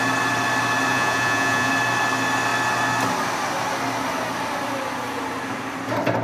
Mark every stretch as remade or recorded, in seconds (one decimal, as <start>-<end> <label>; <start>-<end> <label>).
0.0-0.9 recorded; 0.9-1.7 remade; 1.7-6.2 recorded